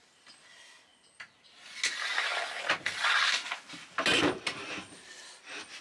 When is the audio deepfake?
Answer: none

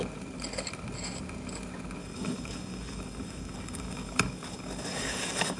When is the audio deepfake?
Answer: 2.0-5.6 (codec, DAC)

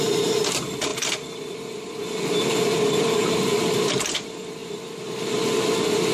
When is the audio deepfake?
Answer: 0.0-6.1 (vocoder, BigVGAN v2)